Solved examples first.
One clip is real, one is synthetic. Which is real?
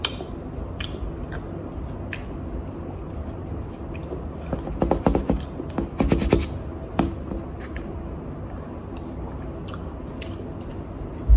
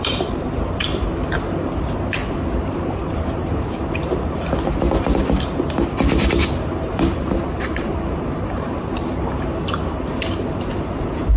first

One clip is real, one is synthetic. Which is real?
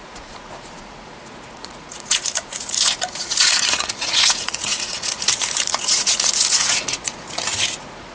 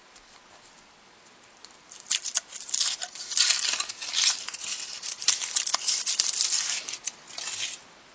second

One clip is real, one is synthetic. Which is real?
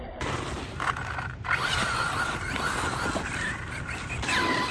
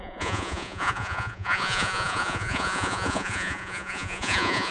first